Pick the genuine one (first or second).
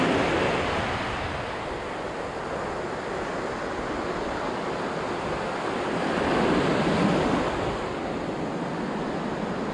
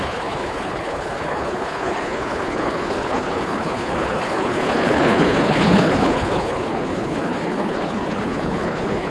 first